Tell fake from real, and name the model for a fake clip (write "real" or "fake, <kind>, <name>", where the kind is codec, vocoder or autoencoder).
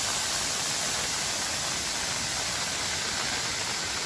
real